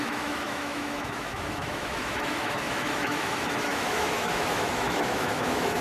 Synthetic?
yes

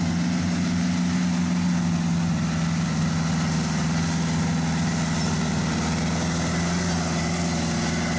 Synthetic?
no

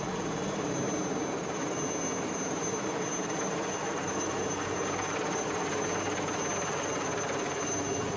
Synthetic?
no